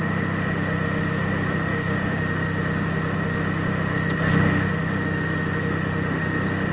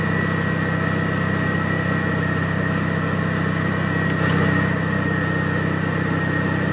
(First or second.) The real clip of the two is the second